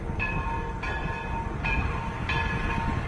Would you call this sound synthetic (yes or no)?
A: no